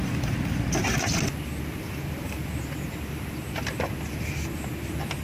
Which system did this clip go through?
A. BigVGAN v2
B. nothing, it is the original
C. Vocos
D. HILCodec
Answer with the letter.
B